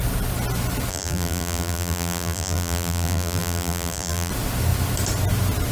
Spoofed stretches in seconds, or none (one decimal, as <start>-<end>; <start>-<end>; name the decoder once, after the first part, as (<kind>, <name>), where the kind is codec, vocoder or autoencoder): 0.9-4.3 (vocoder, BigVGAN v2)